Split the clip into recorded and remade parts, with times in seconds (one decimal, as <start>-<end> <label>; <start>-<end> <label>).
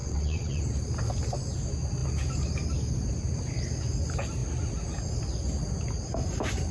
0.0-0.6 remade; 0.6-6.7 recorded